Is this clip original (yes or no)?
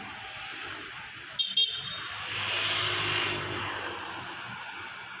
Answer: yes